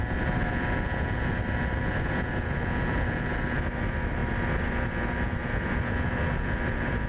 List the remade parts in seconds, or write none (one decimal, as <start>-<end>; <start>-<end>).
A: none